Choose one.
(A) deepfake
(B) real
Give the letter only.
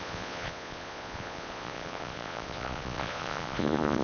A